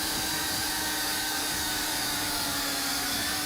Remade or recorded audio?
remade